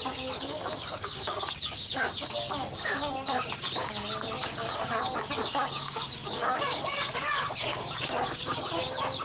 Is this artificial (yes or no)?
yes